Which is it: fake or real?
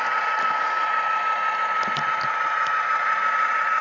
fake